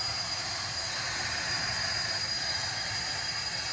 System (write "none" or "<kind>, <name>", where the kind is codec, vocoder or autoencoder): vocoder, BigVGAN v2